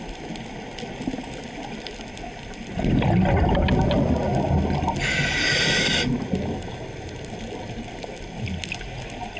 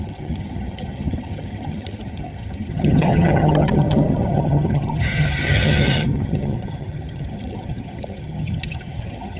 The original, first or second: first